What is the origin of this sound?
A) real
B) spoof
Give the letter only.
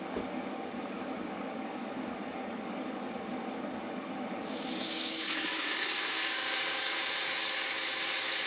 B